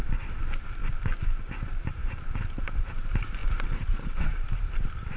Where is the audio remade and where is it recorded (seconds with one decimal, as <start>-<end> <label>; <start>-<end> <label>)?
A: 0.0-5.2 remade